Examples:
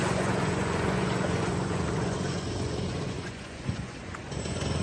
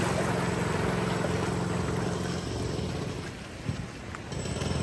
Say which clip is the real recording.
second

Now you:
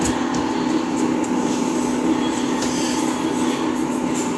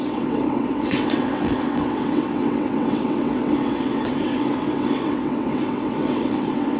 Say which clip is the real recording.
first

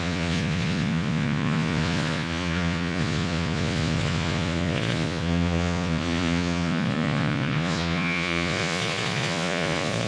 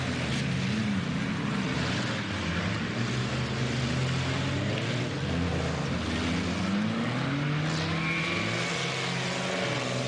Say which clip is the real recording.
second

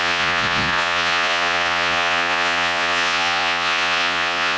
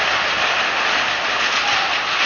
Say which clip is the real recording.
second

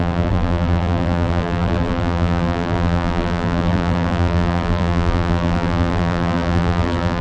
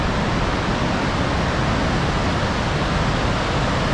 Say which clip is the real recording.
second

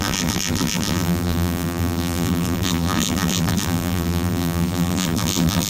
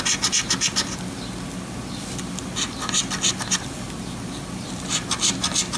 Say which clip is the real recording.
second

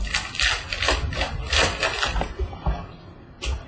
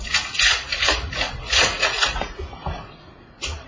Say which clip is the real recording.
first